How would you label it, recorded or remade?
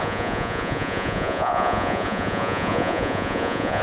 remade